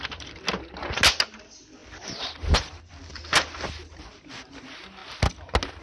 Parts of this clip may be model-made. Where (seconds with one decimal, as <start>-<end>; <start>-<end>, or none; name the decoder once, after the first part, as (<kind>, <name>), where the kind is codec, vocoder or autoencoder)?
1.8-4.2 (vocoder, BigVGAN v2)